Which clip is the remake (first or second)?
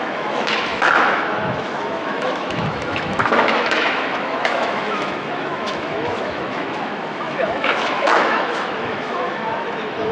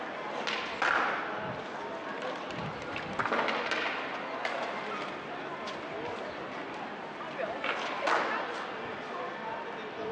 first